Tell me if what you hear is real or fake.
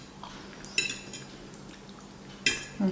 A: real